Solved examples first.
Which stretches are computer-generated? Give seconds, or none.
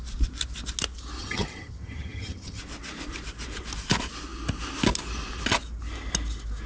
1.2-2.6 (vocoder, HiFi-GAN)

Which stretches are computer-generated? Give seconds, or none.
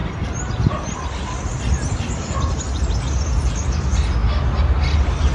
none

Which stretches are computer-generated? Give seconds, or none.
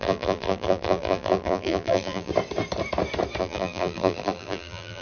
0.0-2.3 (vocoder, BigVGAN v2); 3.4-5.0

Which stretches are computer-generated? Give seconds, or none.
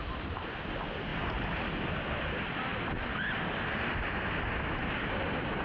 none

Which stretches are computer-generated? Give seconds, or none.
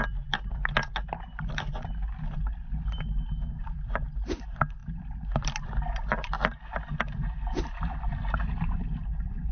none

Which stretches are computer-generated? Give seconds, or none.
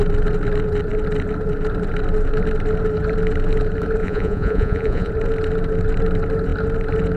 4.0-5.1 (vocoder, Vocos)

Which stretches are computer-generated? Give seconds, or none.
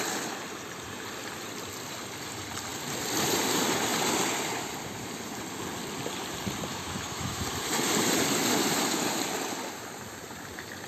6.7-7.4 (autoencoder, DAC-VAE)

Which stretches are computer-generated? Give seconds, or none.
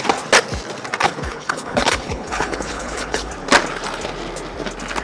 1.0-3.3 (codec, HILCodec)